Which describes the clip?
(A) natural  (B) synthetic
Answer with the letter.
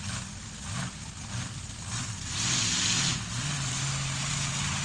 A